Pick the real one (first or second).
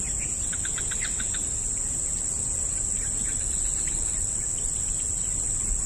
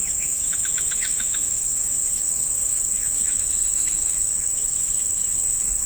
first